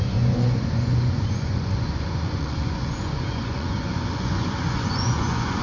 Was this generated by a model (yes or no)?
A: yes